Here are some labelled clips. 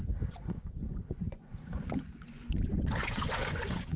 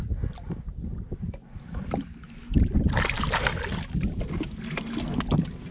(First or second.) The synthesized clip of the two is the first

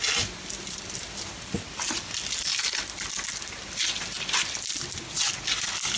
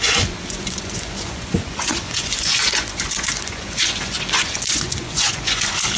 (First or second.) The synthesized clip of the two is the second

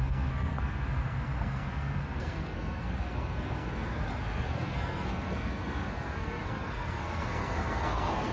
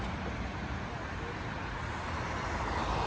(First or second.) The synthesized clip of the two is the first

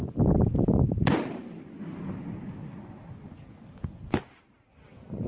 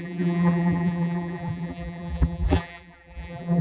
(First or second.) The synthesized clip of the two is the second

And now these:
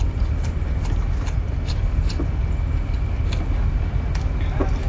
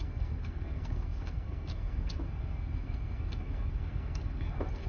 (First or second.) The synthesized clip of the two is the second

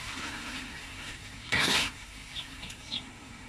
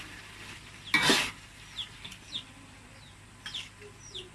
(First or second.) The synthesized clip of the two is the first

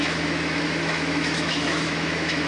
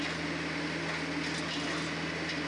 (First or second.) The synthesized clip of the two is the first